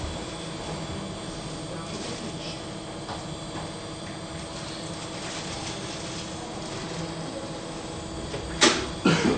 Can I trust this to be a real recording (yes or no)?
yes